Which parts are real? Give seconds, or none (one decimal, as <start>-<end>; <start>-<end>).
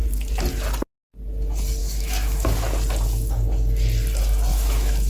0.0-1.8; 2.5-4.5